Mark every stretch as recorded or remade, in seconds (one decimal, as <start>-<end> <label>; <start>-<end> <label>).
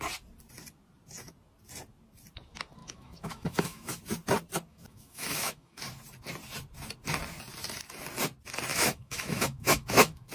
0.0-2.8 recorded; 2.8-4.0 remade; 4.0-4.7 recorded; 4.7-5.8 remade; 5.8-8.7 recorded; 8.7-10.3 remade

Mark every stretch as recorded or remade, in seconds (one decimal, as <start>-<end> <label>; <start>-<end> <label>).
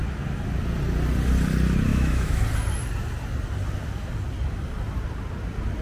0.0-1.9 recorded; 1.9-2.4 remade; 2.4-5.8 recorded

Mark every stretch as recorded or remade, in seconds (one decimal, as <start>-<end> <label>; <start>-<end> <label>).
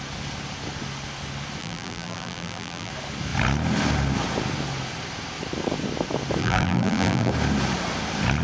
0.0-1.6 recorded; 1.6-2.9 remade; 2.9-6.4 recorded; 6.4-7.3 remade; 7.3-8.4 recorded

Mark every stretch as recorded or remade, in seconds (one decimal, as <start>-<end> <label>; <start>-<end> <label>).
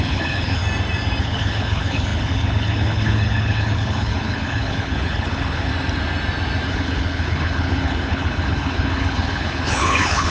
0.0-0.6 remade; 0.6-1.2 recorded; 1.2-5.7 remade; 5.7-6.7 recorded; 6.7-10.3 remade